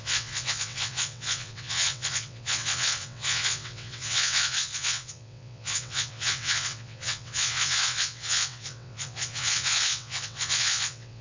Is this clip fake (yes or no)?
yes